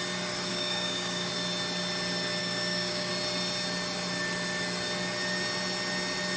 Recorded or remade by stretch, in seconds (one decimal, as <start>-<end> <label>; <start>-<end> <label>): 0.0-0.5 recorded; 0.5-1.3 remade; 1.3-2.4 recorded; 2.4-3.1 remade; 3.1-6.4 recorded